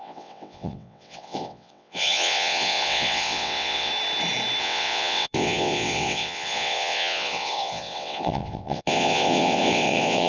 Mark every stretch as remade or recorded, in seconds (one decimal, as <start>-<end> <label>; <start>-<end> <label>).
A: 0.0-3.9 remade; 3.9-4.6 recorded; 4.6-10.3 remade